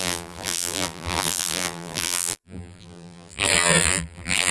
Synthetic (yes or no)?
yes